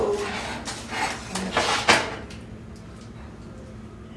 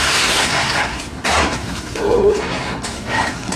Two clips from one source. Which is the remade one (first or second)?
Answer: second